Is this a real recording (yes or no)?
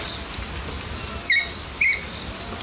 yes